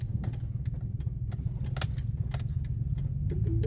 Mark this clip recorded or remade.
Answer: recorded